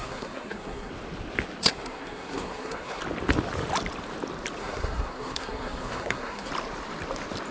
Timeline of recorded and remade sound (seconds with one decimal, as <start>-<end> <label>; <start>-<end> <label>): 0.0-0.9 remade; 0.9-1.6 recorded; 1.6-3.0 remade; 3.0-4.6 recorded; 4.6-6.5 remade; 6.5-7.5 recorded